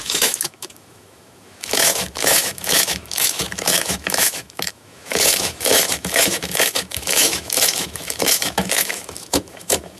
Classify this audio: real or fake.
fake